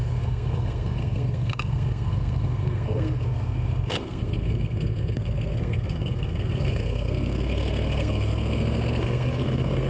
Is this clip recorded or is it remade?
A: remade